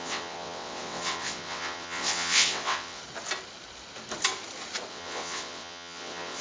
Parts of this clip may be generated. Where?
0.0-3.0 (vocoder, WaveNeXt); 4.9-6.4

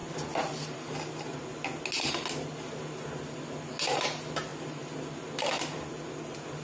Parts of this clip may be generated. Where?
none

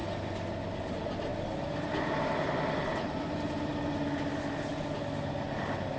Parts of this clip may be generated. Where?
none

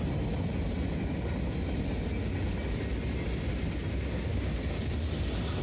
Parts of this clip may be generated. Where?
4.3-4.9 (codec, DAC)

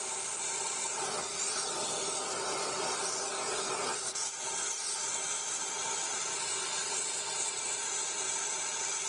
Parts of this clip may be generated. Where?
none